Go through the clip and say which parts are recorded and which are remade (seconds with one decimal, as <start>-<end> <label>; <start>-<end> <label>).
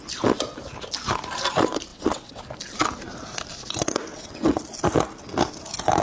0.0-1.9 recorded; 1.9-2.4 remade; 2.4-4.1 recorded; 4.1-4.6 remade; 4.6-6.0 recorded